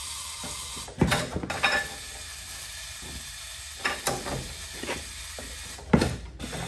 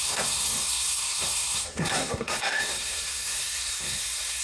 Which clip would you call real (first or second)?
first